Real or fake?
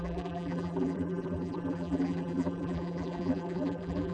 fake